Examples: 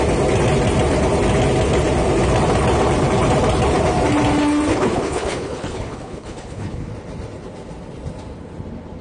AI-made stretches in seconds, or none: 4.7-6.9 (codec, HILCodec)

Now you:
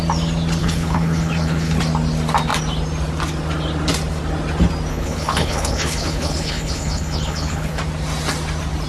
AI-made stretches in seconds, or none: 0.6-1.8 (codec, HILCodec); 4.9-7.8

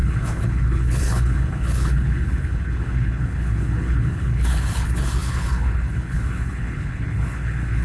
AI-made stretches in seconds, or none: 0.0-7.8 (codec, HILCodec)

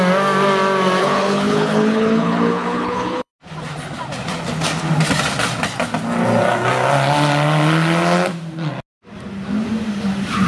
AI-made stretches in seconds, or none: 1.0-3.3 (codec, HILCodec)

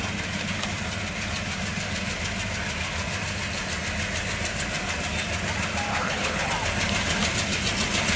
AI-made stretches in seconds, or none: 5.9-6.5 (codec, HILCodec)

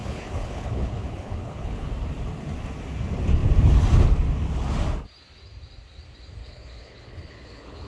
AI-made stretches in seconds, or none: 0.0-1.9 (codec, HILCodec); 6.4-7.9